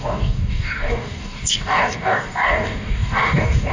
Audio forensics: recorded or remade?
remade